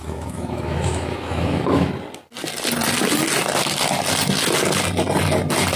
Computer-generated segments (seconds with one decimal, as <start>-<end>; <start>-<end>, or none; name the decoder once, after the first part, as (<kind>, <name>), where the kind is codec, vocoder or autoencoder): 0.0-1.9 (autoencoder, DAC-VAE)